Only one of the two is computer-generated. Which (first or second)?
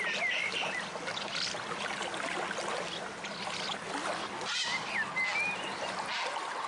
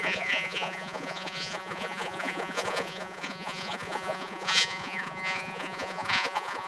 second